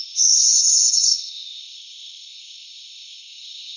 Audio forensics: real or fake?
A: fake